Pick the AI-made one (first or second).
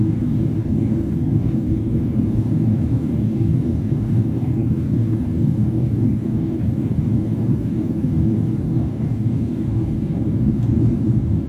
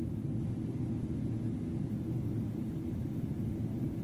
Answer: first